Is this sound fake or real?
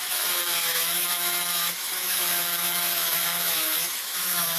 fake